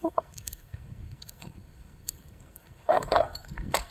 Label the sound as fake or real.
fake